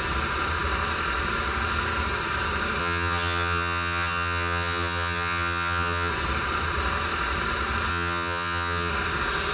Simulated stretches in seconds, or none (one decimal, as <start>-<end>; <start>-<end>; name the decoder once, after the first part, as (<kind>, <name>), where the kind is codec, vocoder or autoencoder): 2.8-6.1 (vocoder, HiFi-GAN); 7.9-8.9